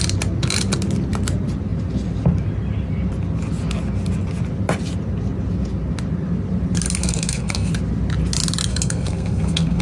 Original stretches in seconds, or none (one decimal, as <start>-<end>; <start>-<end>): 0.0-7.0; 7.7-8.7